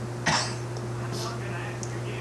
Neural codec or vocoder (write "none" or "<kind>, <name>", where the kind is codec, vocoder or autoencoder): none